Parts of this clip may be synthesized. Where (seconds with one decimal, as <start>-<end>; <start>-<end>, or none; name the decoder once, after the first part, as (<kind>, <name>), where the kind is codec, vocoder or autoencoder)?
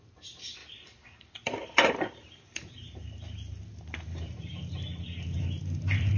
0.6-3.6 (vocoder, BigVGAN v2); 4.1-6.2